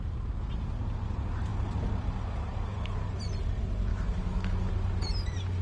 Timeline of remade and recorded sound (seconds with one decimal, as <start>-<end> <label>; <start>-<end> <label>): 0.0-3.9 recorded; 3.9-4.7 remade; 4.7-5.6 recorded